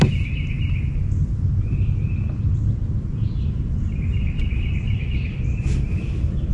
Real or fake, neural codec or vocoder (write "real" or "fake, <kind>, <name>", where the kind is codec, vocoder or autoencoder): real